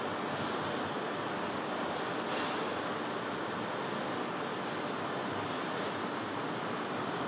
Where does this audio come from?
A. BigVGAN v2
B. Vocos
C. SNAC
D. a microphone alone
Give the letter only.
D